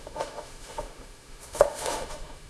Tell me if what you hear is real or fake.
fake